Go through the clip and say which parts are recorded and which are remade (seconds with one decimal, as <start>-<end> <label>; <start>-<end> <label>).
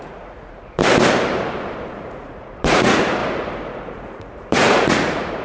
0.0-0.8 remade; 0.8-1.9 recorded; 1.9-5.4 remade